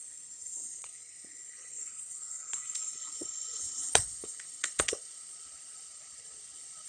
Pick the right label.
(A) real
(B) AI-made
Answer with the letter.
B